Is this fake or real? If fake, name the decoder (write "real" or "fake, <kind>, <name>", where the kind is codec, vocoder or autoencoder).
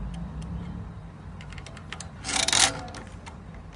real